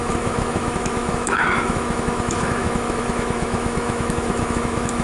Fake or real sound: fake